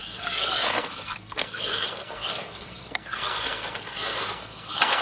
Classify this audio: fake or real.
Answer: fake